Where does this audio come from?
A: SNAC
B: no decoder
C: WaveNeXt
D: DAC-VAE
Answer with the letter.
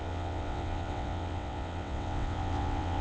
C